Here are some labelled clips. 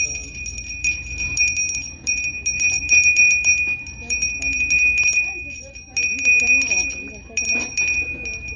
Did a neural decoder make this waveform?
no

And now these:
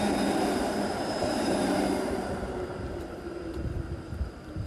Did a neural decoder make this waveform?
yes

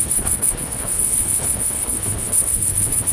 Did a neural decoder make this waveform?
yes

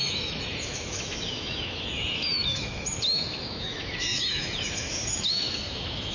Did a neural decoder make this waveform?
yes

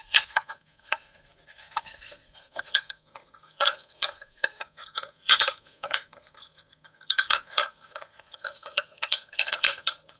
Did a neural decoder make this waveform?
yes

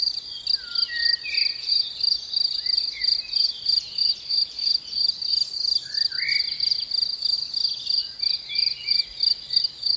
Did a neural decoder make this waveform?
no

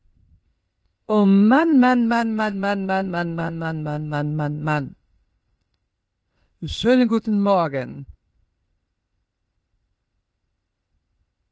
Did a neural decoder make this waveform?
yes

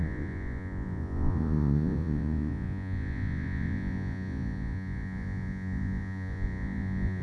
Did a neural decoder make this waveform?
yes